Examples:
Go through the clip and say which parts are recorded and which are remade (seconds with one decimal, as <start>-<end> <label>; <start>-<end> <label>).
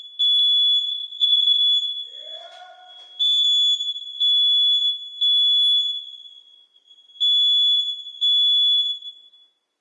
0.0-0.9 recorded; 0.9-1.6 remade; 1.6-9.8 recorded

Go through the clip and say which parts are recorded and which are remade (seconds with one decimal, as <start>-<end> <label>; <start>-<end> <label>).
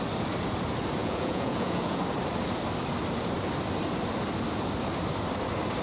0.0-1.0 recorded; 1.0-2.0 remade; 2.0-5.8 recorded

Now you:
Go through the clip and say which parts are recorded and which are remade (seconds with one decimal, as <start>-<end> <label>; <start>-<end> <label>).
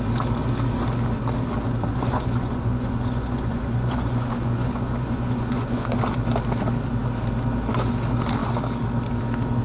0.0-1.9 recorded; 1.9-6.0 remade; 6.0-9.6 recorded